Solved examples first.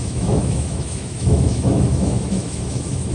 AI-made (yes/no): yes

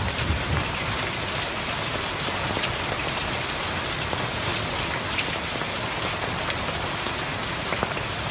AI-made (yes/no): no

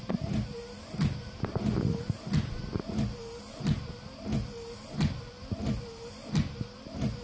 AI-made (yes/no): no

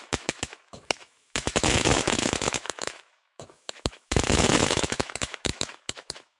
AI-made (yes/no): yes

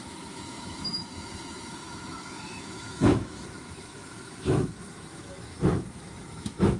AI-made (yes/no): yes